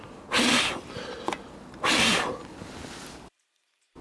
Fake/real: real